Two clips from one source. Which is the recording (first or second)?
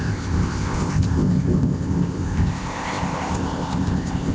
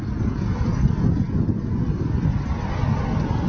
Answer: second